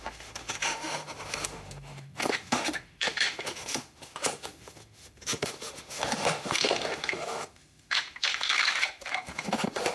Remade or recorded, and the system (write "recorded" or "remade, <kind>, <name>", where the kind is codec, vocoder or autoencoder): remade, autoencoder, DAC-VAE